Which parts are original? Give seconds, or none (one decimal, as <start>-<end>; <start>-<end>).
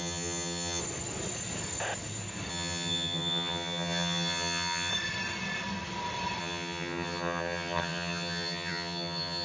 0.8-2.5; 4.9-6.4